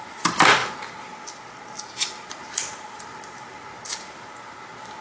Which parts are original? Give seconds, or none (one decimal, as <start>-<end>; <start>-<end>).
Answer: 0.0-5.0